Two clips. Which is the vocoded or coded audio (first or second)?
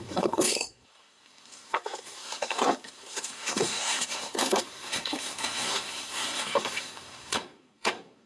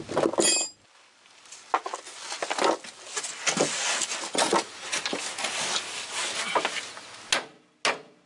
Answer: first